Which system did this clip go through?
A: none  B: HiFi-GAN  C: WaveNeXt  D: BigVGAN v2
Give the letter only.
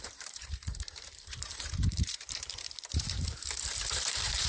D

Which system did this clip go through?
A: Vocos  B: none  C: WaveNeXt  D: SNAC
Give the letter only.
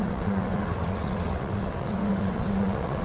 C